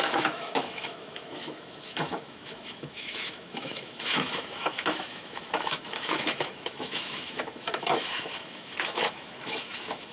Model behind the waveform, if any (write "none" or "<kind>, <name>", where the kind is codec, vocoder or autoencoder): autoencoder, DAC-VAE